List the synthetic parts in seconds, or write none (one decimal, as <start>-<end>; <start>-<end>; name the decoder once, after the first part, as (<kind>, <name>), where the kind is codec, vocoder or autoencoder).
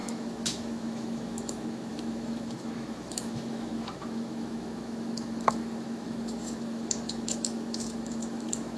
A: 0.0-8.8 (autoencoder, DAC-VAE)